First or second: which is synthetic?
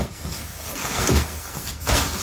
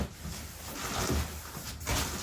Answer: first